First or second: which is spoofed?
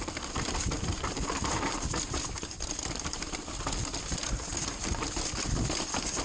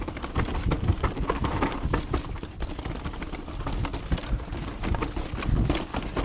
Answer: first